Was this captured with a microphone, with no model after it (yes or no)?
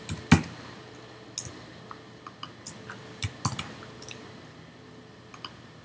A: yes